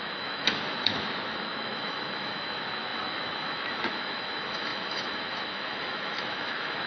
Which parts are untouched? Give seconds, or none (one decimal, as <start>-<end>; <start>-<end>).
none